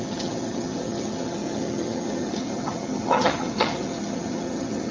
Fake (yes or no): yes